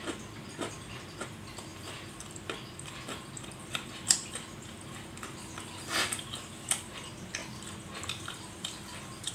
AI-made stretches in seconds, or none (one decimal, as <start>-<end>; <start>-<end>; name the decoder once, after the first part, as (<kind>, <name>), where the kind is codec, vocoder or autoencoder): 0.0-7.4 (vocoder, BigVGAN v2); 8.3-9.3